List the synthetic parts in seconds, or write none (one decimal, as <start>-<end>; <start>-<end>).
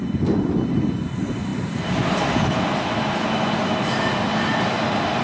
none